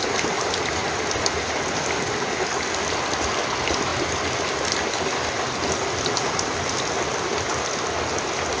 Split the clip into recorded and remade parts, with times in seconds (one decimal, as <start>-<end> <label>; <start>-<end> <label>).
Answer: 0.0-8.6 recorded